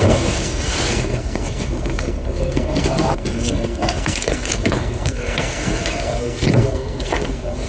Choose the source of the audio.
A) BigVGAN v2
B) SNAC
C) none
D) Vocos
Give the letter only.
B